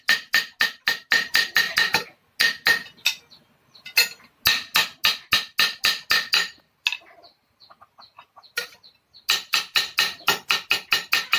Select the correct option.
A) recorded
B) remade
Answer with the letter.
A